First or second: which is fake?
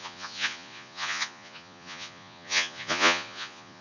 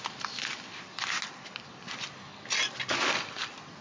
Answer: first